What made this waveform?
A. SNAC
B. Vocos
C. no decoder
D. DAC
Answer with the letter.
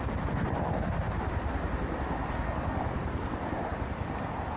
C